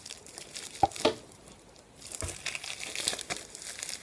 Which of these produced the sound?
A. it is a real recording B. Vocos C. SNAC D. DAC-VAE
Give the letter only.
A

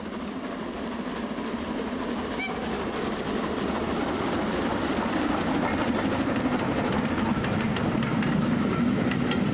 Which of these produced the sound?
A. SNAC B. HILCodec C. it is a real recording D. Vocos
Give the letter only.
C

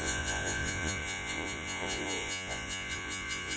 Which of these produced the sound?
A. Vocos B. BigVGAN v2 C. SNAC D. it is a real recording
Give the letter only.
A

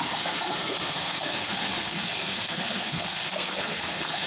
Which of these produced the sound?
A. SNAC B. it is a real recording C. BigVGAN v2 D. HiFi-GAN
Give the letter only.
A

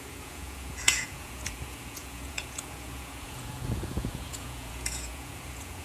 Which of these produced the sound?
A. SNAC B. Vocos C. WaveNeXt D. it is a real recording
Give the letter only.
B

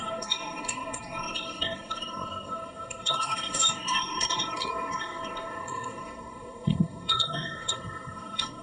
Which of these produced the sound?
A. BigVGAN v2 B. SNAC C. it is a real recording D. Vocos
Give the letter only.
B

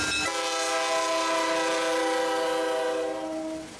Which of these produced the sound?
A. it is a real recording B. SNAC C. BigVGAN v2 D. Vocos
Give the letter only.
A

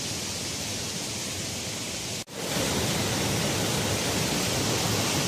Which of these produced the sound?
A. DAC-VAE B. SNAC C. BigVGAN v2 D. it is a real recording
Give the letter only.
D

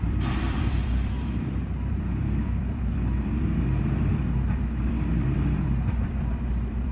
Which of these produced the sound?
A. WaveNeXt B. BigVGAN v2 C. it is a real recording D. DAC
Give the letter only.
B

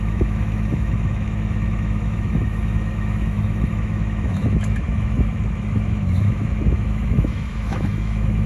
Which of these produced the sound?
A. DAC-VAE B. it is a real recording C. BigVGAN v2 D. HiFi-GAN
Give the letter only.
A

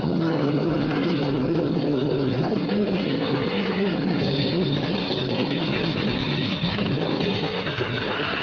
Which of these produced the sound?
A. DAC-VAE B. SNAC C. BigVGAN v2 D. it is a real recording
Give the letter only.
B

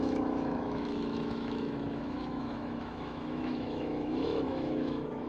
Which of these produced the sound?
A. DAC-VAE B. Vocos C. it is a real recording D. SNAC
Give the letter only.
A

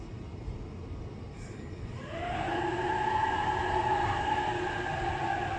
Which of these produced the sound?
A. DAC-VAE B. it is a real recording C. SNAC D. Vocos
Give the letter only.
B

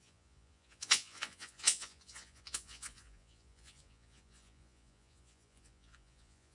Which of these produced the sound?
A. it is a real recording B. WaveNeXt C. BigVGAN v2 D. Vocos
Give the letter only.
D